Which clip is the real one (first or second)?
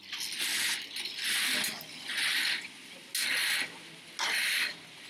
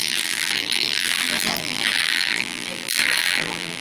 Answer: first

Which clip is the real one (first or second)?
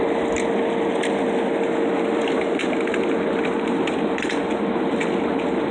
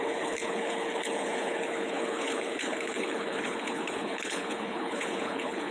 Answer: first